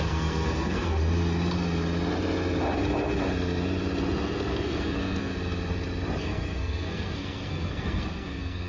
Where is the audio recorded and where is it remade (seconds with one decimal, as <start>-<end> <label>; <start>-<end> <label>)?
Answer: 0.0-1.0 remade; 1.0-4.5 recorded; 4.5-5.3 remade; 5.3-6.2 recorded; 6.2-8.7 remade